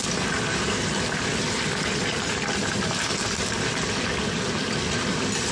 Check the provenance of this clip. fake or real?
real